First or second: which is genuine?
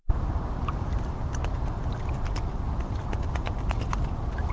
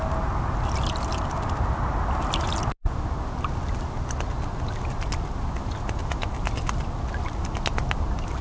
second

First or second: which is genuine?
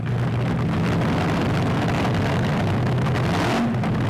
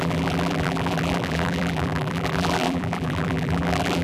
first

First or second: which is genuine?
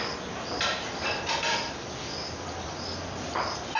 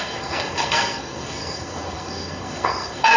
first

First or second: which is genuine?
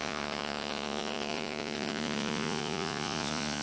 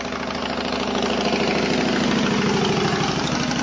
second